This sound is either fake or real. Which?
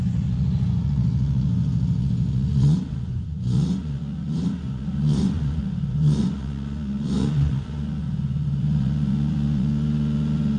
fake